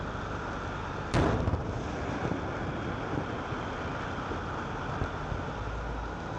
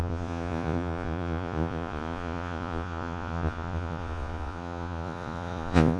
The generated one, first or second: second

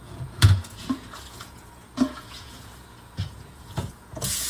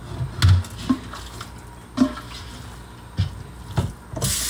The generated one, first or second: first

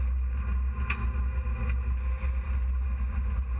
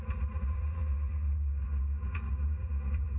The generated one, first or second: second